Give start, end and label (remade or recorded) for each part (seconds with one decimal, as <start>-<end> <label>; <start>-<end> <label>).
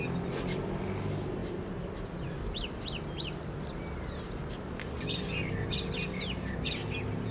0.0-7.3 recorded